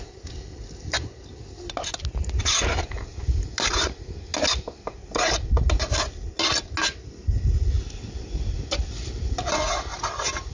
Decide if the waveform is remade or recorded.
recorded